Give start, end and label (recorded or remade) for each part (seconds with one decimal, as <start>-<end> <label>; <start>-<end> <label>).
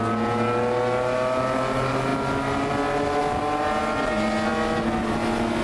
0.0-5.6 recorded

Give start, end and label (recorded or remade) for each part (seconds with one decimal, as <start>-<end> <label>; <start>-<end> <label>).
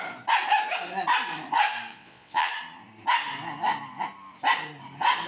0.0-1.9 recorded; 1.9-2.5 remade; 2.5-5.3 recorded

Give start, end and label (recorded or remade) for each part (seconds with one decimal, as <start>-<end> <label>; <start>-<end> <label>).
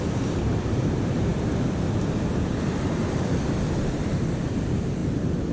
0.0-5.0 remade; 5.0-5.5 recorded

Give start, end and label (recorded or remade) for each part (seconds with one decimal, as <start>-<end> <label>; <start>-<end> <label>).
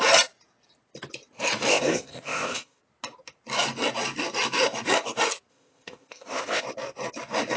0.0-1.7 recorded; 1.7-2.8 remade; 2.8-5.5 recorded; 5.5-6.6 remade; 6.6-7.6 recorded